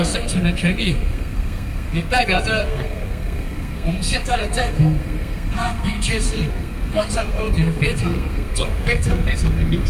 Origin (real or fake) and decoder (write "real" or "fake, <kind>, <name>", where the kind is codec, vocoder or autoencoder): fake, codec, SNAC